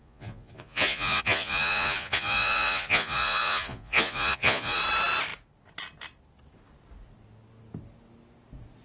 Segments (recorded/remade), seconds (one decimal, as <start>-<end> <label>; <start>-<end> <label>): 0.0-4.8 remade; 4.8-8.8 recorded